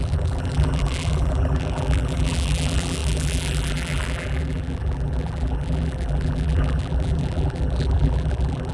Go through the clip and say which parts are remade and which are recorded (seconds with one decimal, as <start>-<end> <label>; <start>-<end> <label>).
0.0-8.7 remade